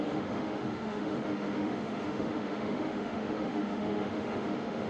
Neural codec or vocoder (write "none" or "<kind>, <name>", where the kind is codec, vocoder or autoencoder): autoencoder, DAC-VAE